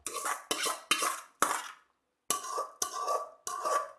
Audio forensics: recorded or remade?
recorded